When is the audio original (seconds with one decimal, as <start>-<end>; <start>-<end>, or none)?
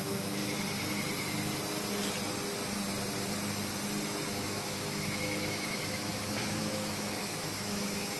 0.4-4.3